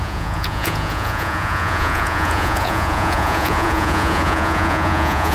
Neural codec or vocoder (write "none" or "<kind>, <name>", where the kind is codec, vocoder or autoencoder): vocoder, Vocos